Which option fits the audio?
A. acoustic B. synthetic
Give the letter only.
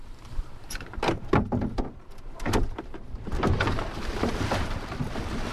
B